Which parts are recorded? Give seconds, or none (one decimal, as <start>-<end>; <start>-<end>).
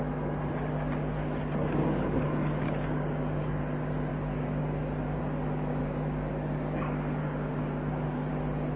0.0-1.2; 3.6-4.1; 5.2-5.8; 8.3-8.8